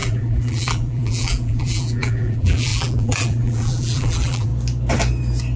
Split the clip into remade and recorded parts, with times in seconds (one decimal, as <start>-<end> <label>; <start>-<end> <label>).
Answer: 0.0-4.5 remade; 4.5-5.6 recorded